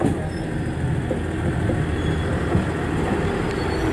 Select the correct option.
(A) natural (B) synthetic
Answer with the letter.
A